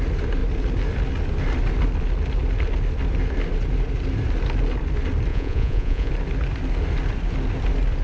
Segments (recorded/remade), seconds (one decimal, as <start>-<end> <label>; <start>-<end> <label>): 0.0-5.3 recorded; 5.3-6.1 remade; 6.1-8.0 recorded